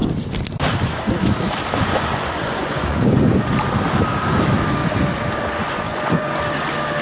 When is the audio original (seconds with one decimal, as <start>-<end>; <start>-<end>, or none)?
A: 0.0-1.8; 3.5-5.6; 6.4-7.0